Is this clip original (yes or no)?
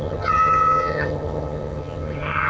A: no